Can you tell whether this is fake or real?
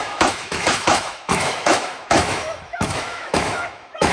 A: fake